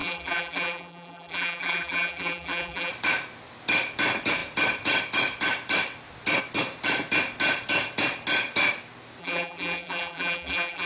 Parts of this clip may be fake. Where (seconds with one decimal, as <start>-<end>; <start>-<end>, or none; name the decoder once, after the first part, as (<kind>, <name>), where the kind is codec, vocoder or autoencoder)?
0.0-2.9 (vocoder, BigVGAN v2); 9.2-10.9